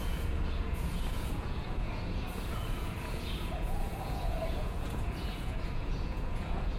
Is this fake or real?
fake